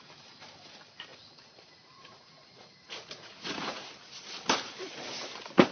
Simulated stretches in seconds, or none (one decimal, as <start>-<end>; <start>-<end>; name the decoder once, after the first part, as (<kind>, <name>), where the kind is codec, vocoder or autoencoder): 1.1-3.9 (vocoder, Vocos)

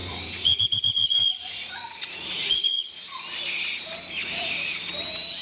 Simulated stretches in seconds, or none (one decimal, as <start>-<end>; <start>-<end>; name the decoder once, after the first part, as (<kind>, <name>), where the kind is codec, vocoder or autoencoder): 0.0-3.2 (vocoder, Vocos); 4.2-4.8

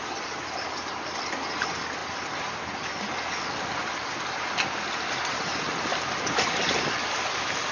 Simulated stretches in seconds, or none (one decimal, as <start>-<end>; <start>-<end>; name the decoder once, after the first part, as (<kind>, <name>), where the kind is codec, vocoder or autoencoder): none

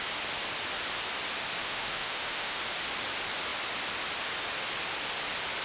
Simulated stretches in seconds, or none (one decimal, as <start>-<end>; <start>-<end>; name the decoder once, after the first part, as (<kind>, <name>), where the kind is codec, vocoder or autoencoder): 1.6-2.6 (autoencoder, DAC-VAE)

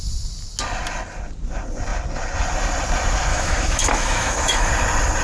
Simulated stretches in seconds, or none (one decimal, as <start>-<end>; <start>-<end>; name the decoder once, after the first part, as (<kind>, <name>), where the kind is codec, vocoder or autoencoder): 3.3-4.7 (autoencoder, DAC-VAE)

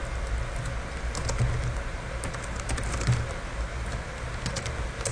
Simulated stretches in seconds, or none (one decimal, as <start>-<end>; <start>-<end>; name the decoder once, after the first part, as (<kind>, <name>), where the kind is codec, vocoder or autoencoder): none